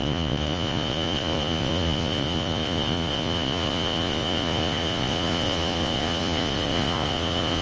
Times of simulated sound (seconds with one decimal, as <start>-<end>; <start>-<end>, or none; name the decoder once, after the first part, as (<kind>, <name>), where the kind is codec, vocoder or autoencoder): 0.0-7.6 (vocoder, Vocos)